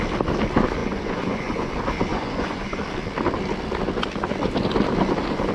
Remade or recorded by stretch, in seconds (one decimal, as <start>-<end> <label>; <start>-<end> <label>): 0.0-0.8 recorded; 0.8-1.7 remade; 1.7-2.1 recorded; 2.1-2.8 remade; 2.8-5.5 recorded